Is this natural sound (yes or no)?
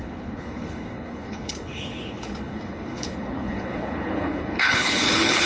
no